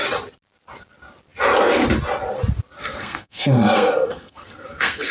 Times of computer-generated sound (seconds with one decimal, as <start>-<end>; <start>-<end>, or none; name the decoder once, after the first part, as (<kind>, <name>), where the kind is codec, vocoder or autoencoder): 2.8-5.1 (codec, SNAC)